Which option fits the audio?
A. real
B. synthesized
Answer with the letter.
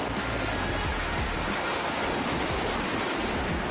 A